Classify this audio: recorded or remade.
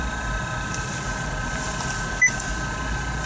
recorded